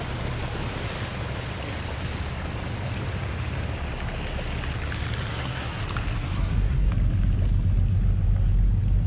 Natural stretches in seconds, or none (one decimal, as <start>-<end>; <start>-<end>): 0.0-5.3; 5.8-6.2; 6.9-9.1